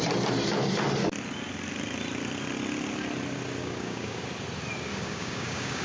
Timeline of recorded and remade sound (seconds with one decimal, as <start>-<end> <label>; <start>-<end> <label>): 0.0-3.6 recorded; 3.6-4.2 remade; 4.2-4.9 recorded; 4.9-5.8 remade